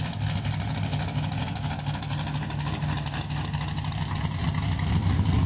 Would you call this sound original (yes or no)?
yes